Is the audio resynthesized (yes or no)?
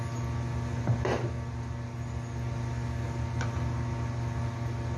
no